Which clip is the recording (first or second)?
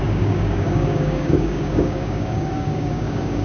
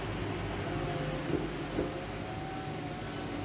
second